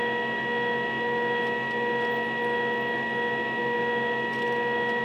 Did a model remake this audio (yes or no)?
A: no